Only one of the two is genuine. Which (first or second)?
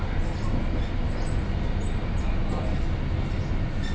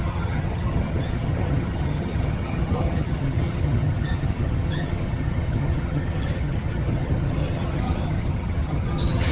first